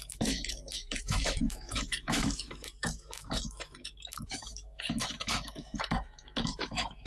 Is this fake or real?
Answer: fake